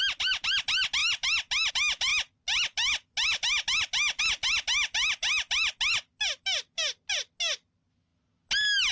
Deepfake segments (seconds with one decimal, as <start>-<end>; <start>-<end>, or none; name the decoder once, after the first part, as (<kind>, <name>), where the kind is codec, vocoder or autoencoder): none